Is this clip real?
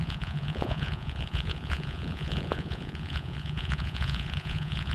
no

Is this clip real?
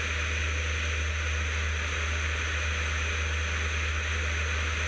yes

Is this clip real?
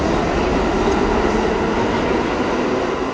yes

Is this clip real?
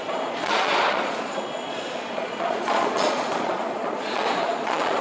no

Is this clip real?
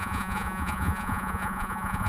no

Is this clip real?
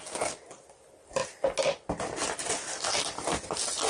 yes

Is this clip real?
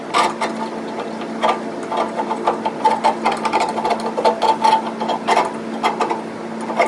yes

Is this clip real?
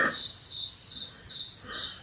yes